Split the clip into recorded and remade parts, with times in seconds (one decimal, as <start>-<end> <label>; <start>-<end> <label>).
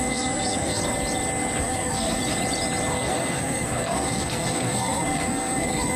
0.0-0.8 remade; 0.8-1.6 recorded; 1.6-2.2 remade; 2.2-2.9 recorded; 2.9-6.0 remade